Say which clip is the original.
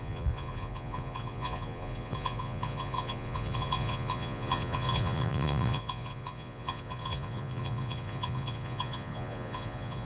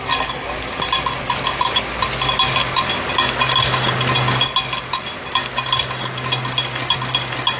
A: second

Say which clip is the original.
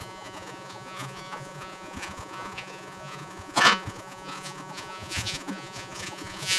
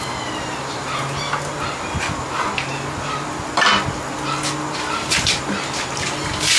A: second